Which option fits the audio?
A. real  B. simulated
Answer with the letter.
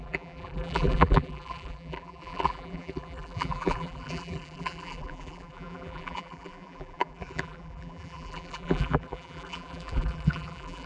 B